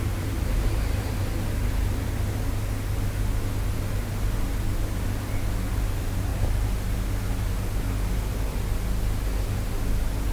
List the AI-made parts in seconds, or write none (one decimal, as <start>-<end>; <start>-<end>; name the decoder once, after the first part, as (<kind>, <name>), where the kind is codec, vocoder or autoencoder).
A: 0.0-1.3 (vocoder, BigVGAN v2); 5.7-6.3